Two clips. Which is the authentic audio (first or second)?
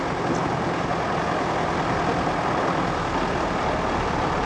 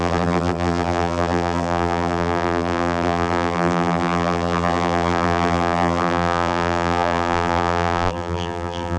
first